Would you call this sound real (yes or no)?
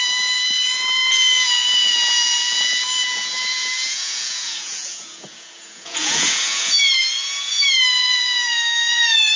no